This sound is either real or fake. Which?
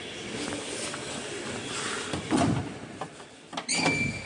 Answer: real